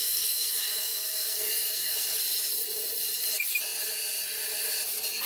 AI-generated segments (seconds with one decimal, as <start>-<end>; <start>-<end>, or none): 0.0-2.2